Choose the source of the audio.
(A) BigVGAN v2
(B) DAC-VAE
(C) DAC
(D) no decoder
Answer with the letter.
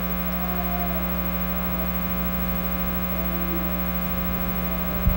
D